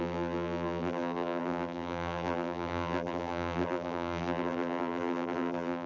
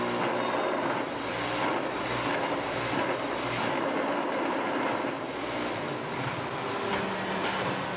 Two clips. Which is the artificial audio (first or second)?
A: first